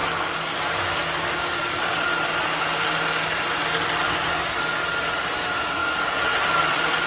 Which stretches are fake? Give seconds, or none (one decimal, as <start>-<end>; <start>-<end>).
none